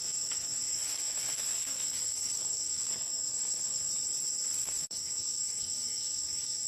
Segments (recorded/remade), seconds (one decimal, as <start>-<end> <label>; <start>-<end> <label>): 0.0-3.9 remade; 3.9-4.6 recorded; 4.6-6.7 remade